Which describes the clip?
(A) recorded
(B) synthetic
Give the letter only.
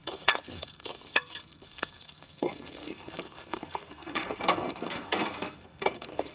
B